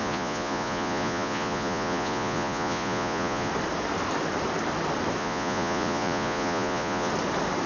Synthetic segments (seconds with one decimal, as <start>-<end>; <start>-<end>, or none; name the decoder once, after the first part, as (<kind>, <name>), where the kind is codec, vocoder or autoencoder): 0.0-3.5 (vocoder, Vocos); 5.2-7.1